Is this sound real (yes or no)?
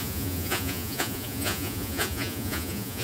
no